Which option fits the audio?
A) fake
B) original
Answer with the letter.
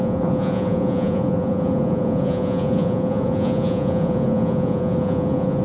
A